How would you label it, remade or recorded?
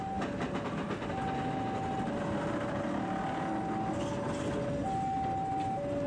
recorded